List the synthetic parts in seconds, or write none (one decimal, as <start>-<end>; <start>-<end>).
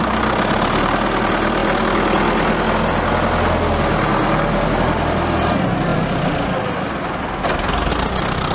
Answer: none